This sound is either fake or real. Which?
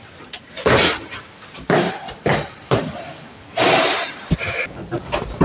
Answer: fake